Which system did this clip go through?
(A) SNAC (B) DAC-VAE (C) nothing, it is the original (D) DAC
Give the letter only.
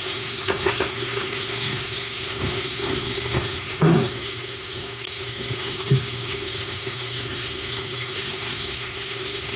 A